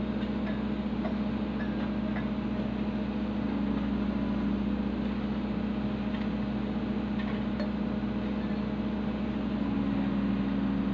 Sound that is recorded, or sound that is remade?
recorded